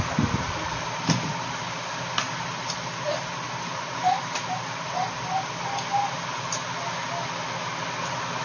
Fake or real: real